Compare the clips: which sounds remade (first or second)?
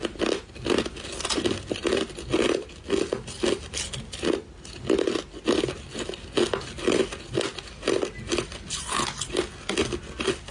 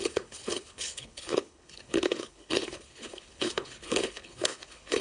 second